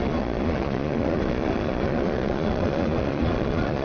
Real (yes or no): no